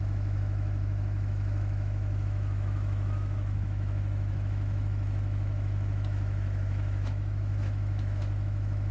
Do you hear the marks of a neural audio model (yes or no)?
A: yes